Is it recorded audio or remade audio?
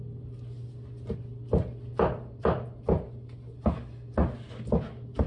recorded